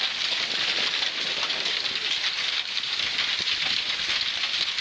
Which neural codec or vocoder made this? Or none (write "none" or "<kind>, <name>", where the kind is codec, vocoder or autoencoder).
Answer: none